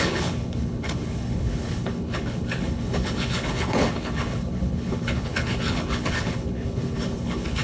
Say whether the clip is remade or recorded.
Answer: remade